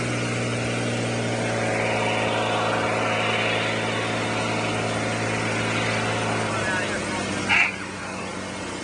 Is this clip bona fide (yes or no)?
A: yes